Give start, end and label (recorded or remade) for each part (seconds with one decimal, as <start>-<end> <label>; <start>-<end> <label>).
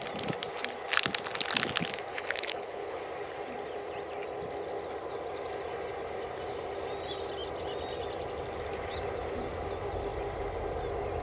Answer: 0.0-2.1 recorded; 2.1-3.0 remade; 3.0-11.2 recorded